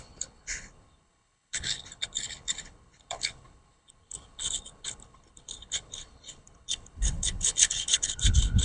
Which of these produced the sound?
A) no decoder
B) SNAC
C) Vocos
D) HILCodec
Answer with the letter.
D